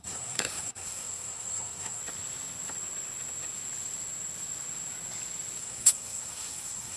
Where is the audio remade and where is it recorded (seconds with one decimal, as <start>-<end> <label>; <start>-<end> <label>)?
0.0-2.0 remade; 2.0-5.6 recorded; 5.6-7.0 remade

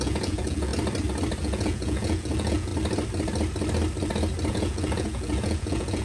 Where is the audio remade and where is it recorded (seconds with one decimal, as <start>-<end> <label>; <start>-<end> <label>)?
0.0-0.7 remade; 0.7-1.4 recorded; 1.4-2.7 remade; 2.7-4.5 recorded; 4.5-6.0 remade

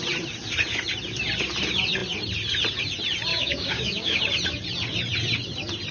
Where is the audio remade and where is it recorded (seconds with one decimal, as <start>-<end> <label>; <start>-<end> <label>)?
0.0-3.3 recorded; 3.3-4.2 remade; 4.2-5.9 recorded